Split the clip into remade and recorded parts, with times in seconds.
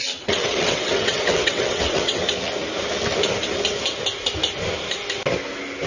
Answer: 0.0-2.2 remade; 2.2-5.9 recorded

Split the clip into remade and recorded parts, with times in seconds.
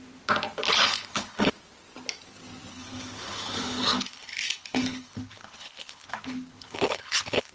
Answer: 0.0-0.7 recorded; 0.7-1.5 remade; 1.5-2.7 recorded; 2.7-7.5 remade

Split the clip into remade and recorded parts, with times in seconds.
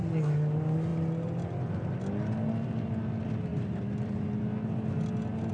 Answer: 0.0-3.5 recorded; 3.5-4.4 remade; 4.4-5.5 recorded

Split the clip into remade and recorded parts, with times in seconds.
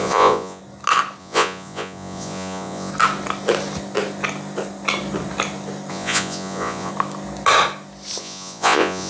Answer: 0.0-0.6 remade; 0.6-1.2 recorded; 1.2-2.9 remade; 2.9-5.9 recorded; 5.9-6.9 remade; 6.9-8.2 recorded; 8.2-9.1 remade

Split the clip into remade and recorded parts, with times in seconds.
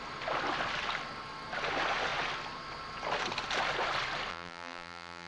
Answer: 0.0-4.3 recorded; 4.3-5.3 remade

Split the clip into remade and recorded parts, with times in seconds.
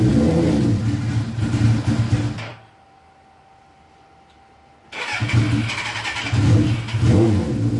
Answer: 0.0-7.8 recorded